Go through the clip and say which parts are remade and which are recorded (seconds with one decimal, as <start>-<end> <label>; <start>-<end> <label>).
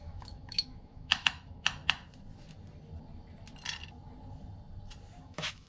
0.0-1.8 remade; 1.8-5.2 recorded; 5.2-5.7 remade